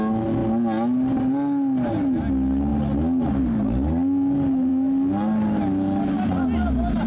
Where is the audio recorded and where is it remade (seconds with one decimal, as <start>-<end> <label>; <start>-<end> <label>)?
0.0-7.1 recorded